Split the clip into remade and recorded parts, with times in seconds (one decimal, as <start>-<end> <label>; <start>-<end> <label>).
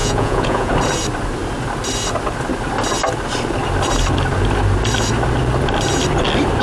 0.0-0.7 remade; 0.7-6.6 recorded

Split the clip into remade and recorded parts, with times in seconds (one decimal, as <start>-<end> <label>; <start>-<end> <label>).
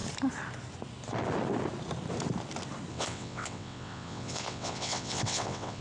0.0-2.9 recorded; 2.9-5.8 remade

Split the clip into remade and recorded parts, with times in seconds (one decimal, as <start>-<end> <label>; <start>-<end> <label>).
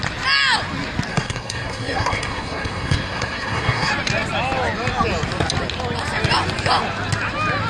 0.0-1.1 recorded; 1.1-3.9 remade; 3.9-7.7 recorded